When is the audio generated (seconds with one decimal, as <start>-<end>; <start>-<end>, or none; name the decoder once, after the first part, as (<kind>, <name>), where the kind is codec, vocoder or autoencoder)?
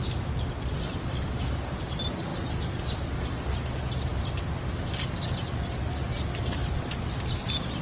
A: none